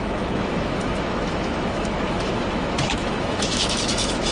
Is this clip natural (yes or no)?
no